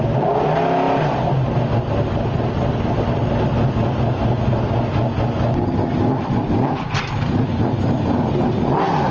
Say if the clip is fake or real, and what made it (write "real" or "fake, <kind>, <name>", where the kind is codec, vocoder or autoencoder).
real